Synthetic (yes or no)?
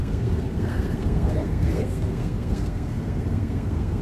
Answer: yes